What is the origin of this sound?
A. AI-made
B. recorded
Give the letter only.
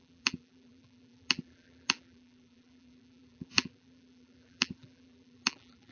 A